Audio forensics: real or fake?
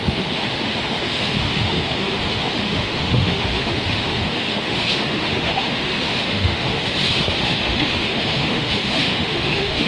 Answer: fake